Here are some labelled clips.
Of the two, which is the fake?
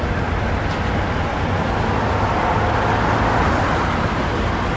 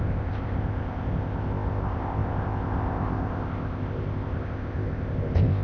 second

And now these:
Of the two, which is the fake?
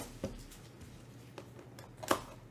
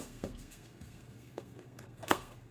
second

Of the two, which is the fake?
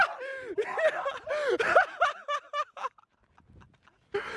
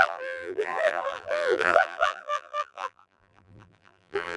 second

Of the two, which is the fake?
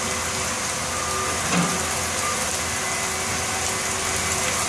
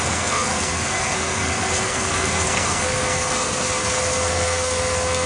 second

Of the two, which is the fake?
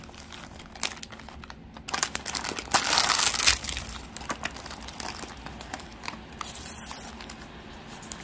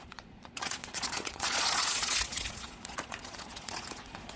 second